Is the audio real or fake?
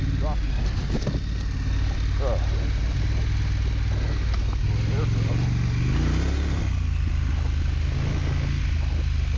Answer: real